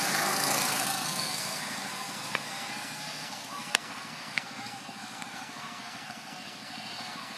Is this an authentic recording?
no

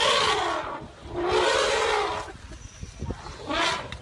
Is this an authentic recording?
yes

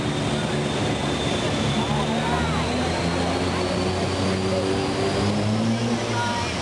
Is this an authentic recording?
yes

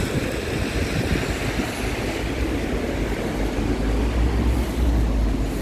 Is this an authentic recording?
yes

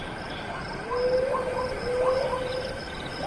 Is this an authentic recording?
yes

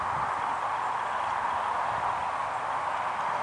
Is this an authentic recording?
yes